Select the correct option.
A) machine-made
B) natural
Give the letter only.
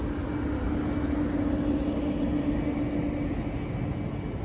B